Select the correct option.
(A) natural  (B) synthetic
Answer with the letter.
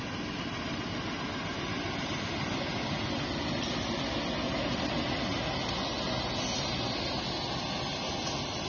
A